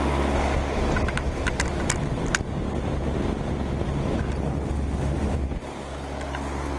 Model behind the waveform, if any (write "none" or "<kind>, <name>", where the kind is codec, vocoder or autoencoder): none